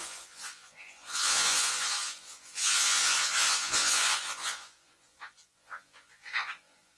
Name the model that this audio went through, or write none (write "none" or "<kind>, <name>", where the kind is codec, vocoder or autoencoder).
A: vocoder, Vocos